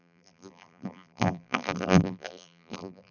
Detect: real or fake fake